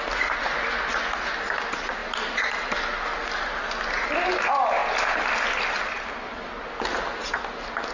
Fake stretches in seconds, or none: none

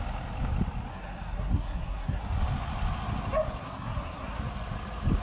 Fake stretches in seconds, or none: 0.9-2.2 (codec, SNAC); 3.6-4.4

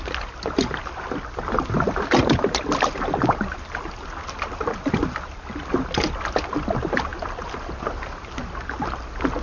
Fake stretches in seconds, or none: none